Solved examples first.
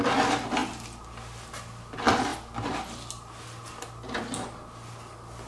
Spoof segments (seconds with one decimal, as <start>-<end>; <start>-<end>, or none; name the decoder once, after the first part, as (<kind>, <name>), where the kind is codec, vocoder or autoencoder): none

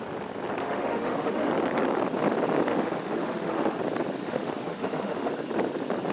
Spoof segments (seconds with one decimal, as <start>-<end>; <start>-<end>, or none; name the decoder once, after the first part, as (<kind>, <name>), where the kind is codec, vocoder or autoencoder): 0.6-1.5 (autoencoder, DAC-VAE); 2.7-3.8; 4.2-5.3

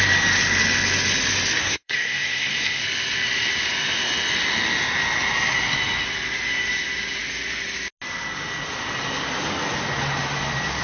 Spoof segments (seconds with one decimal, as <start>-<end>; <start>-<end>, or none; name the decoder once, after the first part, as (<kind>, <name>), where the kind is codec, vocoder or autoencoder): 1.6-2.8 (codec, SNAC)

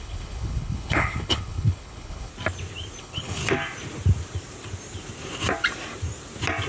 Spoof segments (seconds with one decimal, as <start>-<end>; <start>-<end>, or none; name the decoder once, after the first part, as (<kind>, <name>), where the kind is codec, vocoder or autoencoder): 0.0-2.3 (codec, HILCodec); 3.0-3.4

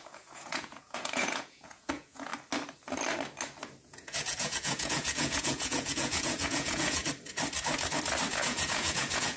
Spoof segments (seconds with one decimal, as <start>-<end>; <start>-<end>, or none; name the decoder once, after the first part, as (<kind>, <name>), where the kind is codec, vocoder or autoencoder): 0.0-2.3 (vocoder, Vocos); 3.8-7.0; 8.3-9.4

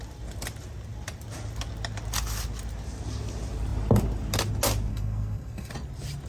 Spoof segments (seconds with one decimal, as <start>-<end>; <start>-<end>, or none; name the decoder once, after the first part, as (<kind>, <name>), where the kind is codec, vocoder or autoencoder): 4.9-5.7 (codec, SNAC)